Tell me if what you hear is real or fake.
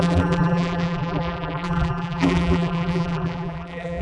fake